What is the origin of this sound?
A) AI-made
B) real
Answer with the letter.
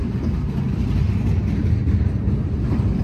A